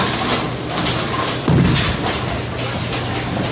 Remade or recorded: recorded